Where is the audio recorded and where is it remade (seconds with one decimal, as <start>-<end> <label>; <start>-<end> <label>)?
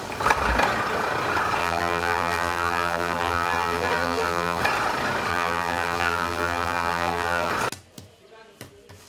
0.0-1.6 recorded; 1.6-4.6 remade; 4.6-5.3 recorded; 5.3-7.5 remade; 7.5-9.1 recorded